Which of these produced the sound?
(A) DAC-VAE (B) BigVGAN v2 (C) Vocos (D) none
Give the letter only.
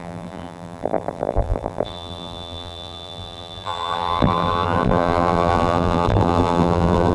B